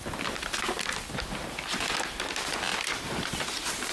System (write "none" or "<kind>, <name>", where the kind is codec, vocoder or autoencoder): vocoder, BigVGAN v2